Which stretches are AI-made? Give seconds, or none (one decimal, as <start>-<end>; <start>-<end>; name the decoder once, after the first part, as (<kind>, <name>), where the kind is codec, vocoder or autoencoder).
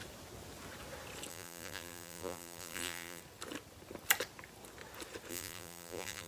1.3-3.2 (vocoder, BigVGAN v2); 5.3-6.3